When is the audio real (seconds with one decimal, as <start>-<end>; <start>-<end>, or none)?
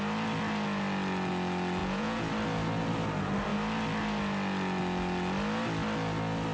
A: 0.0-1.8; 2.3-6.5